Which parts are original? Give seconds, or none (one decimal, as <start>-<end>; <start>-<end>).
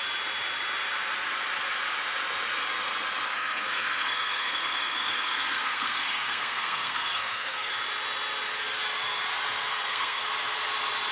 0.0-3.3; 7.7-9.7; 10.2-11.1